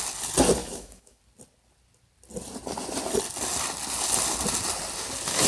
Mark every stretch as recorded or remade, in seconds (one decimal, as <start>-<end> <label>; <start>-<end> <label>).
0.0-0.6 recorded; 0.6-1.2 remade; 1.2-5.5 recorded